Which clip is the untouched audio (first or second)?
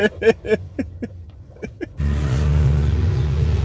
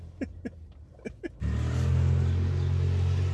second